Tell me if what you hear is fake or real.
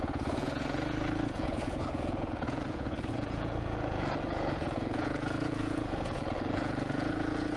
fake